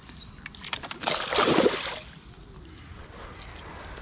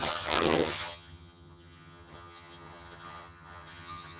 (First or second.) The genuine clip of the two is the first